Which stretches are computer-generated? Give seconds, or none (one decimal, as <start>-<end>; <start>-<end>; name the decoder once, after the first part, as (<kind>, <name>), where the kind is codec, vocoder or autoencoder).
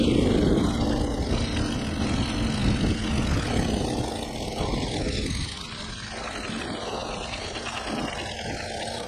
none